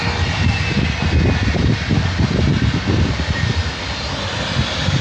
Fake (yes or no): no